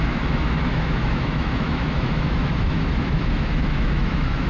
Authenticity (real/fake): fake